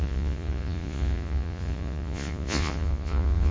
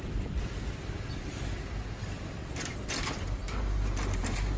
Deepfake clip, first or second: first